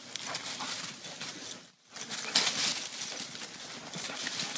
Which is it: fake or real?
real